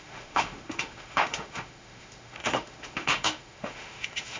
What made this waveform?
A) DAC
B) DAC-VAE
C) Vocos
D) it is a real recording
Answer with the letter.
B